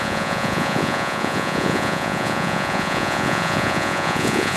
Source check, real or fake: fake